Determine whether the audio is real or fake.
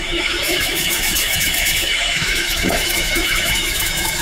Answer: fake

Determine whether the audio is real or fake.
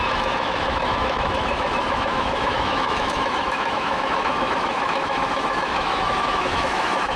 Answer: fake